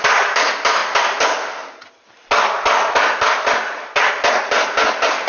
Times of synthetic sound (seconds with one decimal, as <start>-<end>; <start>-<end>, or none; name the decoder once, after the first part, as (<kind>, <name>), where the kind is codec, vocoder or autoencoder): none